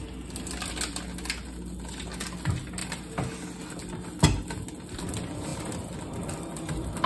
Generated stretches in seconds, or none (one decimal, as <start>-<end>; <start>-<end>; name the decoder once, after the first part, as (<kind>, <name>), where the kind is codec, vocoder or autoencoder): none